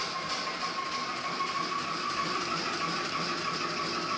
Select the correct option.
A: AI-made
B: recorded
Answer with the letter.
B